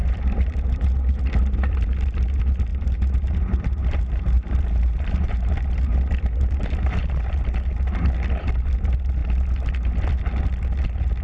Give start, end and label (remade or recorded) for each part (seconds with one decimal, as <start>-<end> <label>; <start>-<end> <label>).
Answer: 0.0-1.2 remade; 1.2-2.7 recorded; 2.7-7.9 remade; 7.9-11.2 recorded